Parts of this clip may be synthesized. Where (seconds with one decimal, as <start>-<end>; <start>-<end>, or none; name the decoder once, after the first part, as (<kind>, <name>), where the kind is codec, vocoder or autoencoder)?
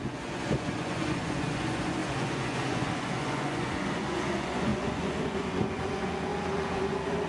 0.0-7.3 (vocoder, Vocos)